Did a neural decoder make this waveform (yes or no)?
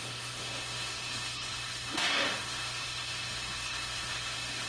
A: yes